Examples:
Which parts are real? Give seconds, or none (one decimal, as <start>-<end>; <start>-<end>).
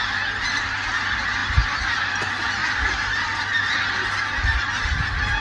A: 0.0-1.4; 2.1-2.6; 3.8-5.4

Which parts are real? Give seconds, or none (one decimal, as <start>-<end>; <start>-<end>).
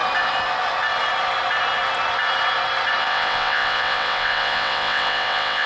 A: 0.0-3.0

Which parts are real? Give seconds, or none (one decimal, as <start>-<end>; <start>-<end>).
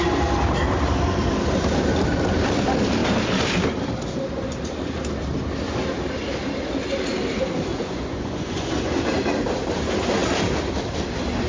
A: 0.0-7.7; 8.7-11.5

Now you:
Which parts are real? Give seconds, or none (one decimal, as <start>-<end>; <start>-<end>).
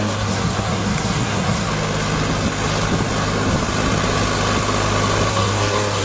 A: 1.7-5.3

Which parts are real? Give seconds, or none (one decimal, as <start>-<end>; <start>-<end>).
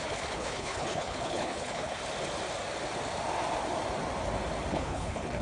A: 2.0-4.7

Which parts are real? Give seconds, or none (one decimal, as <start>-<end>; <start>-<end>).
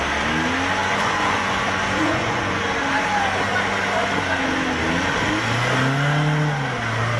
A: 0.0-0.8; 2.6-7.2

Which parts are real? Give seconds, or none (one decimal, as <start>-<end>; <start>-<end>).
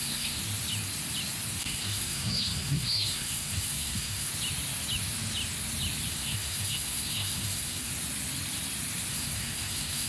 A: 0.4-1.6; 4.3-6.1; 7.9-9.1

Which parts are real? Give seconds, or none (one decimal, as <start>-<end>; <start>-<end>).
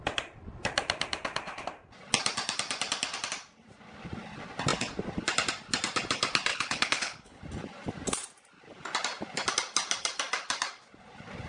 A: 0.0-6.5; 7.4-11.5